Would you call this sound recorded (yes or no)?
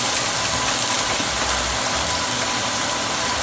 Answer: yes